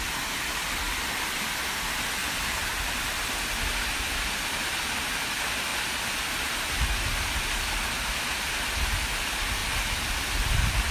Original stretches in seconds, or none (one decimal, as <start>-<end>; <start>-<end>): 0.0-2.2; 4.8-5.7; 6.5-10.9